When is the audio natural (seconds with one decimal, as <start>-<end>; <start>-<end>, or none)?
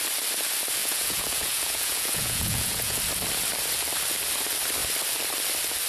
0.0-0.8; 3.0-5.9